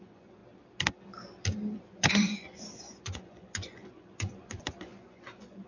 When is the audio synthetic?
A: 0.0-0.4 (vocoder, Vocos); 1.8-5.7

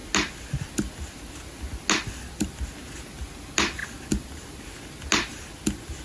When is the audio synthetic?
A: none

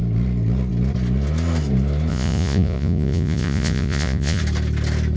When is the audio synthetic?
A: 2.1-4.4 (vocoder, Vocos)

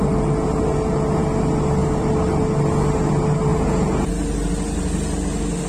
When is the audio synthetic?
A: 3.5-4.1 (vocoder, Vocos)